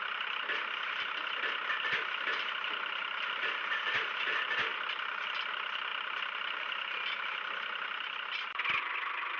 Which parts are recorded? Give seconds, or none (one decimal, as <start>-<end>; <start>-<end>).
4.7-5.5